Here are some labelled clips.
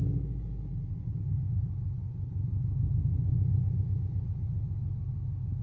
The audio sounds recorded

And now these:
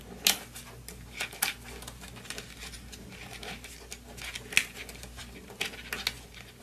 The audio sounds recorded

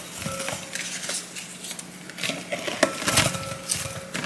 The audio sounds recorded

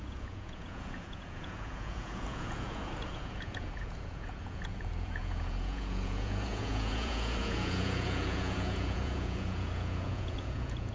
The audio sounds remade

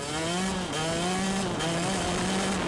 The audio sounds recorded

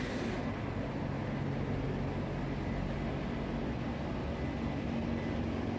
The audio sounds recorded